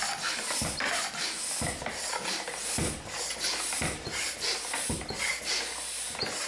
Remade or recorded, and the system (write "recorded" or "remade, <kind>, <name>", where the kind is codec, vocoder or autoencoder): recorded